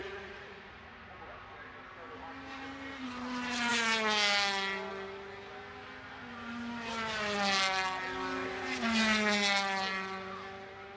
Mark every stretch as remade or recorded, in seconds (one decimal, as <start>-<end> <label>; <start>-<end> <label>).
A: 0.0-1.1 remade; 1.1-11.0 recorded